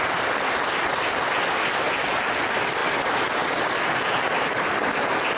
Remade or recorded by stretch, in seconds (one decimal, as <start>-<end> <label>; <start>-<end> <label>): 0.0-5.4 recorded